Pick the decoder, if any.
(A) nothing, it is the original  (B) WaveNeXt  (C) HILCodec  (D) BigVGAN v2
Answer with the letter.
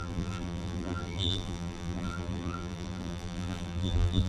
D